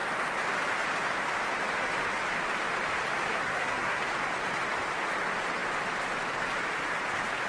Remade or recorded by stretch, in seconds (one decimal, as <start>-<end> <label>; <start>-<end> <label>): 0.0-3.3 recorded; 3.3-4.0 remade; 4.0-7.5 recorded